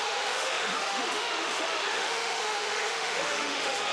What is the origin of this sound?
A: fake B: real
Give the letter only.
A